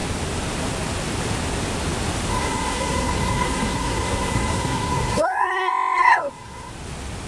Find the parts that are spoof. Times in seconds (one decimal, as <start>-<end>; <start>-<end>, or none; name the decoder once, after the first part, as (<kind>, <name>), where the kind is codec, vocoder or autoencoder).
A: 2.3-6.7 (codec, SNAC)